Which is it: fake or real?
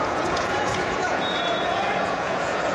fake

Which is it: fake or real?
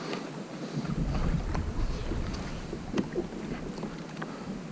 real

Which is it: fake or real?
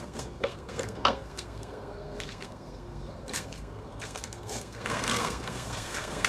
fake